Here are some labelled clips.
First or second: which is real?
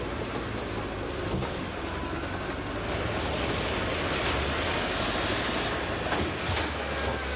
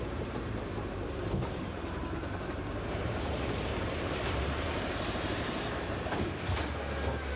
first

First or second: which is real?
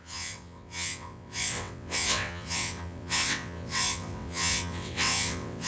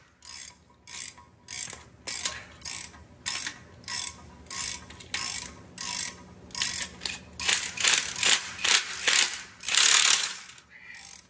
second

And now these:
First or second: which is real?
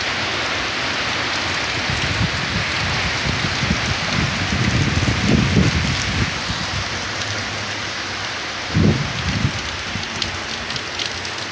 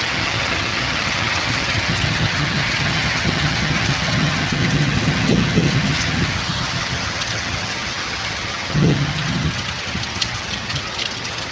first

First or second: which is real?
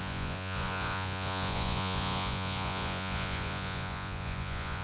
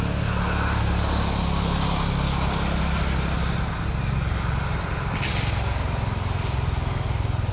second